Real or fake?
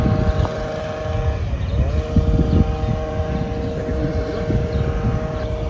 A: real